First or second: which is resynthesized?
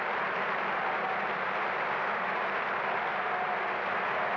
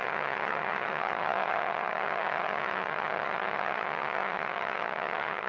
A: second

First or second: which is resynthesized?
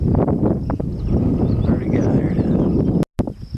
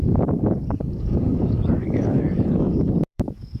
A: second